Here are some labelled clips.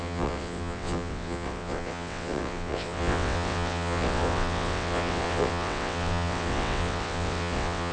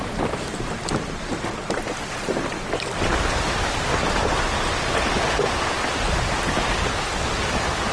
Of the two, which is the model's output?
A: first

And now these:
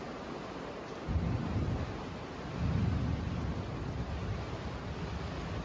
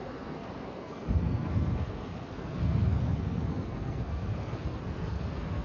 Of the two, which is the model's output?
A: second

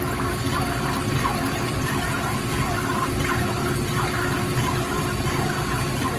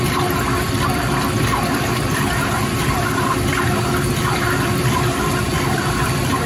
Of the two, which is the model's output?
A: second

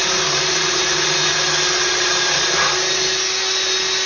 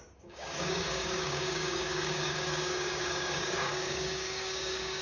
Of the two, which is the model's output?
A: second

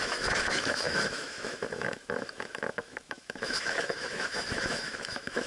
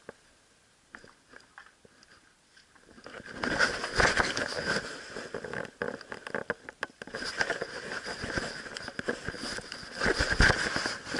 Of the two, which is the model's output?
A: first